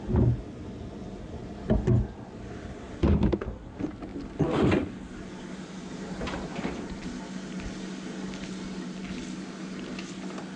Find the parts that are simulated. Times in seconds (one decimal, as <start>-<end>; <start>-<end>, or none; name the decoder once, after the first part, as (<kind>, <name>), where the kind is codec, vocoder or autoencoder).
none